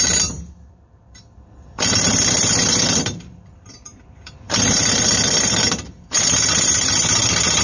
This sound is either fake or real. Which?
fake